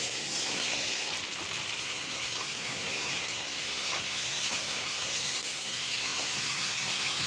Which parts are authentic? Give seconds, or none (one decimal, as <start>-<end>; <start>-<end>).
1.1-1.8